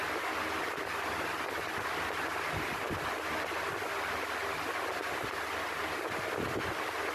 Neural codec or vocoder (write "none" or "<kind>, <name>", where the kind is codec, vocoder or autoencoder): none